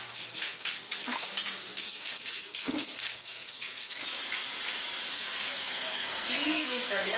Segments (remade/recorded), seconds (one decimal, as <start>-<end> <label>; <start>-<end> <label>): 0.0-4.0 remade; 4.0-5.1 recorded; 5.1-7.2 remade